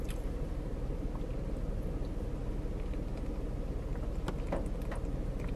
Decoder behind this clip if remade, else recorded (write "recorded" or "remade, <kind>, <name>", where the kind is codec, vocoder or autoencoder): recorded